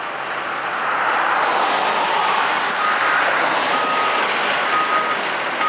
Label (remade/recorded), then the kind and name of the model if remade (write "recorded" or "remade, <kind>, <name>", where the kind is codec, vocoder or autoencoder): recorded